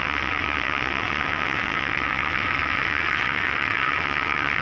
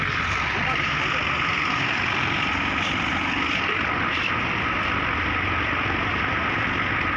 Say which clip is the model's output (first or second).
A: first